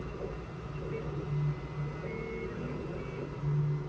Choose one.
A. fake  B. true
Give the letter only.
B